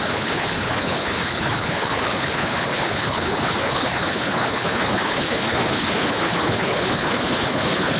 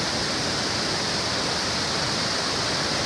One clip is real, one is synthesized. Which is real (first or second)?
second